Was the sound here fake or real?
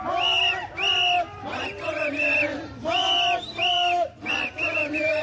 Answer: real